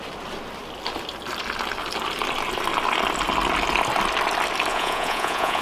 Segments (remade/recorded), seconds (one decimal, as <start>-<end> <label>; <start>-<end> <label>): 0.0-4.7 recorded; 4.7-5.6 remade